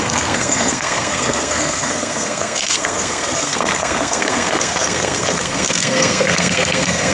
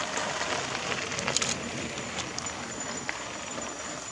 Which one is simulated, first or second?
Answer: first